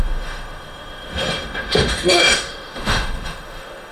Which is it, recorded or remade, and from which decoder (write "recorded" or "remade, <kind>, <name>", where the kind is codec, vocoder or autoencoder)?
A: remade, autoencoder, DAC-VAE